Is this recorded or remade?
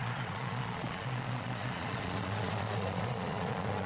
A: remade